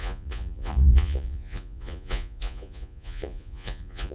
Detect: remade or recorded remade